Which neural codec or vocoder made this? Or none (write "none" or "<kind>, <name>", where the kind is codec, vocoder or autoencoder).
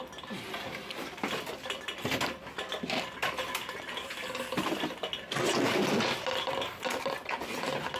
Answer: none